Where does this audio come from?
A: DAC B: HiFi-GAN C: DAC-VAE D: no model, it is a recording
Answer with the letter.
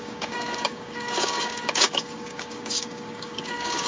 A